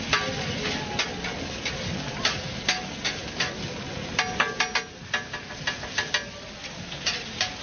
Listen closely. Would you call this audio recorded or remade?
recorded